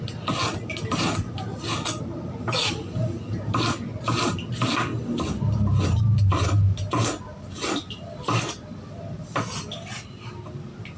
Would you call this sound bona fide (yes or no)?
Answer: yes